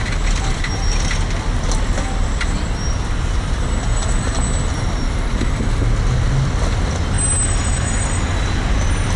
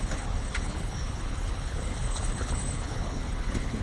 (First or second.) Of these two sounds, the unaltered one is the first